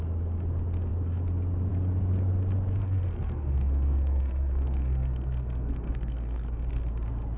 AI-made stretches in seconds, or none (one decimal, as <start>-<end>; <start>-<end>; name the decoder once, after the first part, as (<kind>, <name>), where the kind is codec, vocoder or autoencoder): 2.8-6.6 (codec, SNAC)